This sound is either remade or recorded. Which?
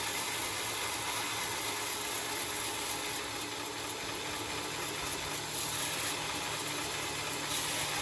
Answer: recorded